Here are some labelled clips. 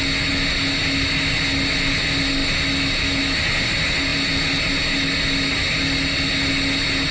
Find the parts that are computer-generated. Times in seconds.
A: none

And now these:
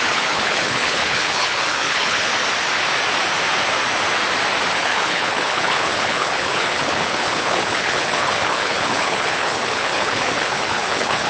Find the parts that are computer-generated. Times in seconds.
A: 0.0-2.3; 4.7-11.3

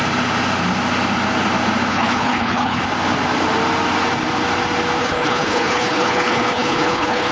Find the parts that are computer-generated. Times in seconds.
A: 1.9-2.8; 5.0-7.3